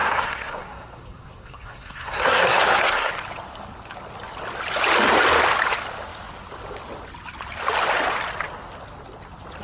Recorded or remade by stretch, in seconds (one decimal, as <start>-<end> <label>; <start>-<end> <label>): 0.0-3.1 remade; 3.1-9.6 recorded